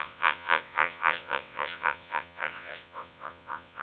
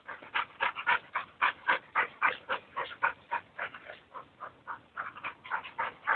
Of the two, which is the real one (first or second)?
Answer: second